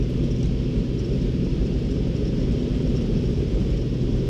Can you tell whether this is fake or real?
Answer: fake